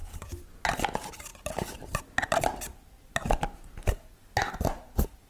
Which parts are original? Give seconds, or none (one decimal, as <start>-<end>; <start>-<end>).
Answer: 0.5-5.3